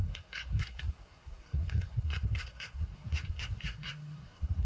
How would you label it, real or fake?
fake